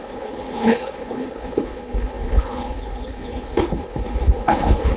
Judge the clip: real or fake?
fake